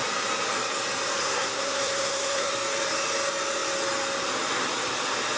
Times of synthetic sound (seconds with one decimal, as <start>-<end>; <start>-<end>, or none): 1.2-2.5